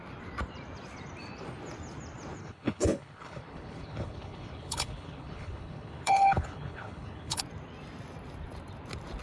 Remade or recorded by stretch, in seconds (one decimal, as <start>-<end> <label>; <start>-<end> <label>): 0.0-2.4 recorded; 2.4-7.4 remade; 7.4-9.2 recorded